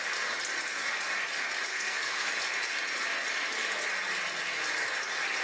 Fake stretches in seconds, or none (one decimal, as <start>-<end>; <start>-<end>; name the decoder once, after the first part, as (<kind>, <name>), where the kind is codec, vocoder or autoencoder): 1.7-2.3 (codec, SNAC)